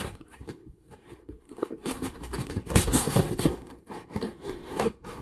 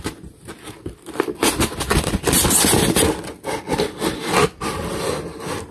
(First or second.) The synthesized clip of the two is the first